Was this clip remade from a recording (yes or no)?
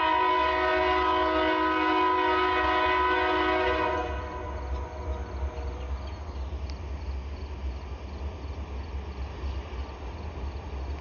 no